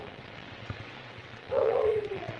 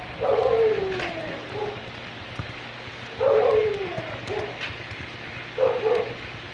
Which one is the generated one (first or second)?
first